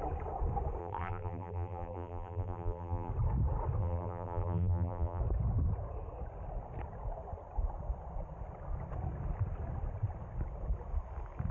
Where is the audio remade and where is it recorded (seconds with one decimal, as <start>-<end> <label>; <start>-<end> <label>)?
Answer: 0.0-0.8 recorded; 0.8-3.1 remade; 3.1-3.8 recorded; 3.8-5.2 remade; 5.2-11.5 recorded